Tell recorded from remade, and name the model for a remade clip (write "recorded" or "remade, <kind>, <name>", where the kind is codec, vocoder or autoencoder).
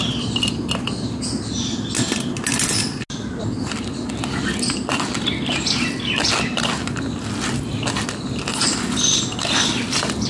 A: recorded